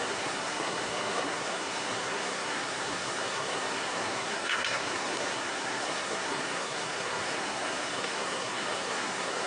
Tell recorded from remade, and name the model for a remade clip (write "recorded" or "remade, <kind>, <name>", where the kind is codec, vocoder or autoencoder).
remade, codec, SNAC